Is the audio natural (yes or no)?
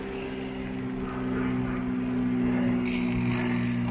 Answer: yes